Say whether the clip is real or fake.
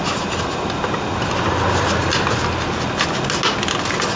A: real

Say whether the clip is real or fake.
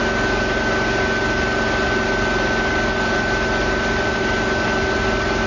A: real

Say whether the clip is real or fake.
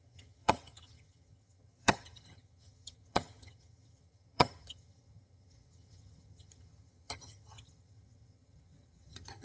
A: fake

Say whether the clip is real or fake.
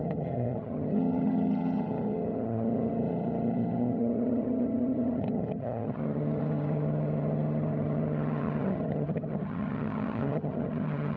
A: fake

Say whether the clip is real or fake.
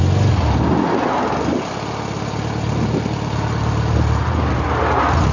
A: real